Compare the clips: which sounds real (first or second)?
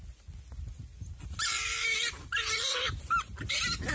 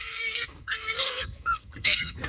first